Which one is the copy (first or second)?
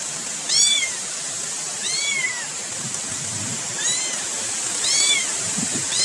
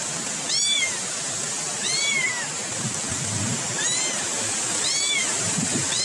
first